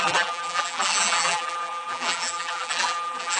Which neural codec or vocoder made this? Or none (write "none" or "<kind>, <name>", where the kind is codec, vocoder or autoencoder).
vocoder, BigVGAN v2